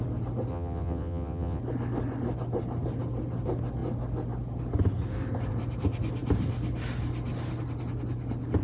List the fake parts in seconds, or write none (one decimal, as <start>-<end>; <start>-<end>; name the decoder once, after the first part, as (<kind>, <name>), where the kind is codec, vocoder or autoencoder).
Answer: 0.5-1.6 (vocoder, WaveNeXt)